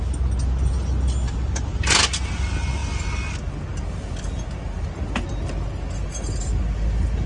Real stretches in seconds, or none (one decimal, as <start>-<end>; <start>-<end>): 0.0-7.3